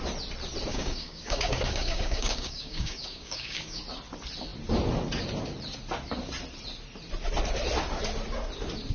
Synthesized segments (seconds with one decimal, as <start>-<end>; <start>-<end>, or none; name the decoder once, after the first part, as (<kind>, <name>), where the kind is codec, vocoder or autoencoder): 0.7-3.8 (codec, DAC)